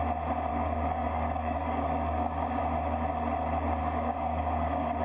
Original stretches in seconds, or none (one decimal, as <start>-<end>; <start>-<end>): 0.0-0.5; 2.6-3.8